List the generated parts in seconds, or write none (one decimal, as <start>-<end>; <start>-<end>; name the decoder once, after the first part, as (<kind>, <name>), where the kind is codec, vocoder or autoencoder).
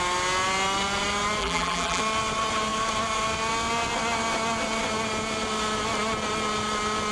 1.4-2.0 (vocoder, BigVGAN v2)